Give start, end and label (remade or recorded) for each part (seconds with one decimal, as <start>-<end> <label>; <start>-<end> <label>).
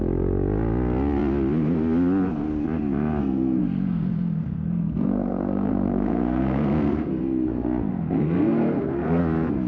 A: 0.0-3.2 recorded; 3.2-7.2 remade; 7.2-7.9 recorded; 7.9-9.2 remade; 9.2-9.7 recorded